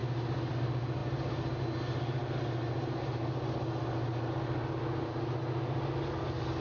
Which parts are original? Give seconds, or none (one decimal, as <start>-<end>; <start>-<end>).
0.0-6.6